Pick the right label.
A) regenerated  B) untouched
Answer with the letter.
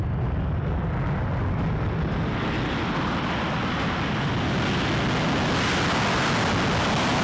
B